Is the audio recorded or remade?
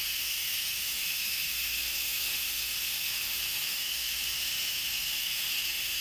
remade